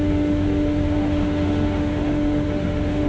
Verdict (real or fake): fake